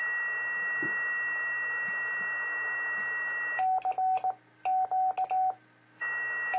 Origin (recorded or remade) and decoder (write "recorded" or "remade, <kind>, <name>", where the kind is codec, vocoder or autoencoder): recorded